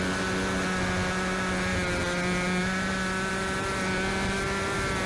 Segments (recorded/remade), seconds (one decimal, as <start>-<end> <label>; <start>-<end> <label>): 0.0-5.1 recorded